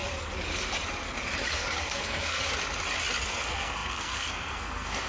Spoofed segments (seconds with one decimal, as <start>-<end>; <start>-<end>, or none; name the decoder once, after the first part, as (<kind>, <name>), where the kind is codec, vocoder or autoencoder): 1.8-2.4 (codec, SNAC); 3.3-5.1